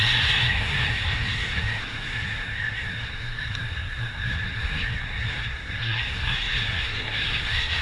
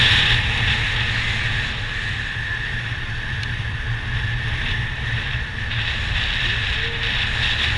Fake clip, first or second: first